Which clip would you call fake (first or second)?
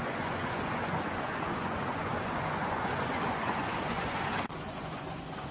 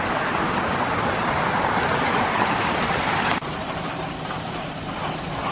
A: first